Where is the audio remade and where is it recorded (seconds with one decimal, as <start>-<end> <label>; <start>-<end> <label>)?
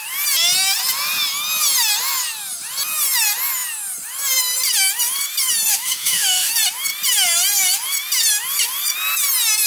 0.0-5.7 recorded; 5.7-6.5 remade; 6.5-9.7 recorded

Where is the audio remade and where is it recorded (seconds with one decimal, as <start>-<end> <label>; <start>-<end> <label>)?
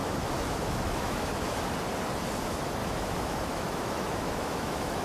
0.0-1.7 remade; 1.7-2.8 recorded; 2.8-5.0 remade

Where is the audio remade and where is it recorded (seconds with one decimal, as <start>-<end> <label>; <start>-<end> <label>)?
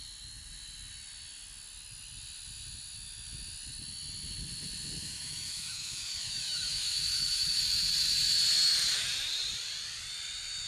0.0-5.0 recorded; 5.0-7.6 remade; 7.6-10.7 recorded